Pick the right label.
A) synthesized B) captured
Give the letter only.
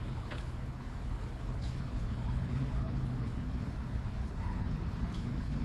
A